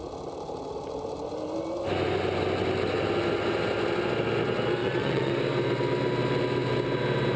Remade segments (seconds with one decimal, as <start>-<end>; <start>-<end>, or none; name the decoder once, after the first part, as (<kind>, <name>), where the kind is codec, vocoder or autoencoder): 4.8-5.3 (vocoder, WaveNeXt)